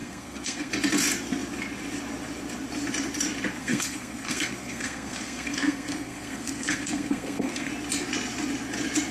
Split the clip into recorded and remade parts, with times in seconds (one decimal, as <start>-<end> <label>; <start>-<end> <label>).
0.0-0.7 remade; 0.7-3.6 recorded; 3.6-7.7 remade; 7.7-9.1 recorded